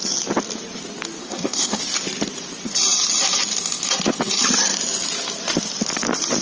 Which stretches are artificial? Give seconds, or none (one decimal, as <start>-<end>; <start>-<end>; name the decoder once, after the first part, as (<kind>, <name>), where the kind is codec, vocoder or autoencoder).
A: 1.2-1.8 (codec, SNAC)